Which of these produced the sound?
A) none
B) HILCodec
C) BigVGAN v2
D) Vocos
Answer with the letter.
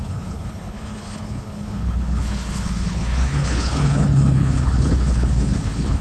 B